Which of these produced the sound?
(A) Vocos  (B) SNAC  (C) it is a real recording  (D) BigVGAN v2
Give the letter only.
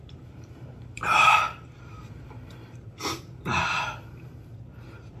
D